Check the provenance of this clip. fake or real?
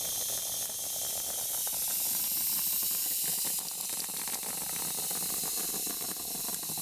real